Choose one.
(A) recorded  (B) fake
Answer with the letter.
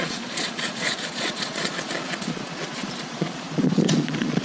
B